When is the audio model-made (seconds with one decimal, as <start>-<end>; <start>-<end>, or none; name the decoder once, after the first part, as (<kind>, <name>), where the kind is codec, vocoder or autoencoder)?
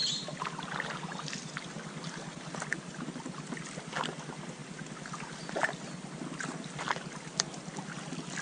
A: none